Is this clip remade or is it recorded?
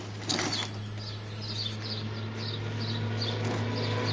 recorded